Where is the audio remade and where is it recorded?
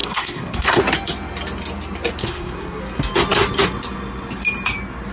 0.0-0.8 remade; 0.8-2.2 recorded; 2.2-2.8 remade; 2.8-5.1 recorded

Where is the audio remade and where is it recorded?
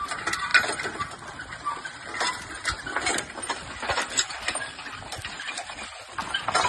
0.0-5.1 recorded; 5.1-5.9 remade; 5.9-6.7 recorded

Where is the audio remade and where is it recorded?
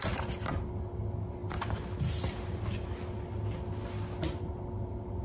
0.0-5.2 recorded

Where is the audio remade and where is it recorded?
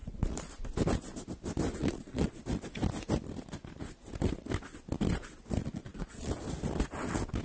0.0-0.5 remade; 0.5-1.8 recorded; 1.8-2.4 remade; 2.4-5.6 recorded; 5.6-6.3 remade; 6.3-7.4 recorded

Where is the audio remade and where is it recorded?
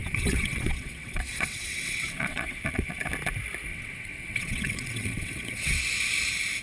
0.0-3.1 remade; 3.1-3.7 recorded; 3.7-5.8 remade; 5.8-6.6 recorded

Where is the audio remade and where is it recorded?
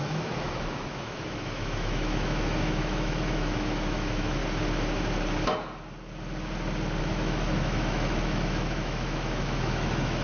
0.0-4.4 remade; 4.4-7.0 recorded; 7.0-10.2 remade